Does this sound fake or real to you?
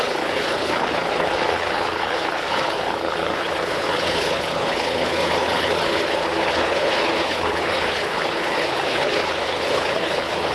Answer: fake